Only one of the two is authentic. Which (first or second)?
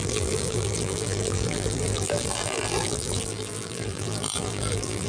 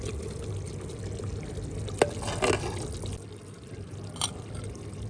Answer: second